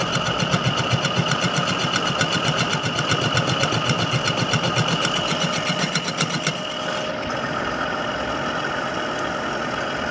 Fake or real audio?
real